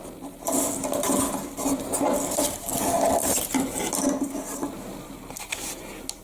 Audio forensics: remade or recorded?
recorded